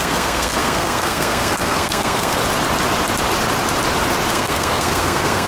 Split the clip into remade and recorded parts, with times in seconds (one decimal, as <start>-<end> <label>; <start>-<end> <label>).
0.0-2.4 remade; 2.4-4.3 recorded; 4.3-5.5 remade